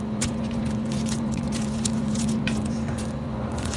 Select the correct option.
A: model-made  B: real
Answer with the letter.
A